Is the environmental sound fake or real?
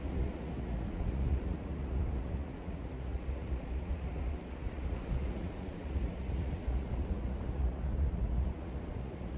fake